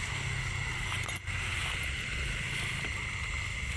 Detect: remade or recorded recorded